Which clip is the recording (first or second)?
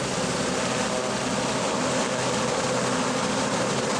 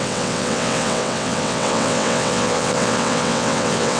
first